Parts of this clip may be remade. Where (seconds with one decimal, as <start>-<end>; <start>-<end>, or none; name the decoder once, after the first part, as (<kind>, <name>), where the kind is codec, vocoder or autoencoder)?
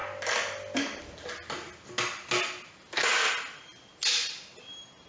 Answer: none